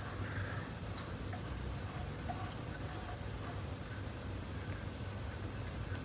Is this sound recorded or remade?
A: recorded